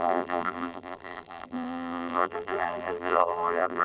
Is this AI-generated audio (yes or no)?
yes